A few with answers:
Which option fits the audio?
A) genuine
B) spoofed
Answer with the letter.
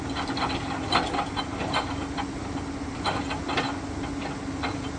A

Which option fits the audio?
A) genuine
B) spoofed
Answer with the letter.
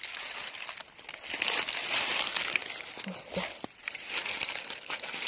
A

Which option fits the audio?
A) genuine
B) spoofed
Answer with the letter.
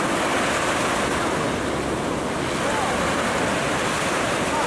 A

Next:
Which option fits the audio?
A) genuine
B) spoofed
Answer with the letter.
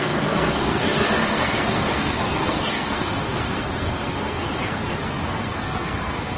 B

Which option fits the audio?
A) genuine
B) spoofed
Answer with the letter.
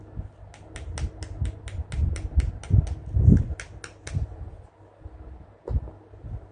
A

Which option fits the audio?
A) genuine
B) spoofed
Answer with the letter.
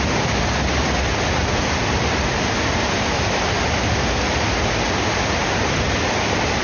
A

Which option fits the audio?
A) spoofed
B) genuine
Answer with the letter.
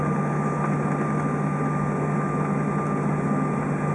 B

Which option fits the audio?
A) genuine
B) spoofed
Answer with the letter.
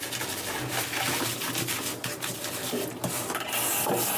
A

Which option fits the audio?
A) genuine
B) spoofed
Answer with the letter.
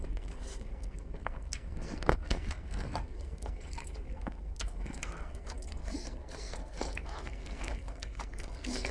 B